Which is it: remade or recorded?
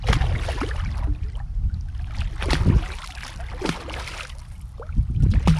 recorded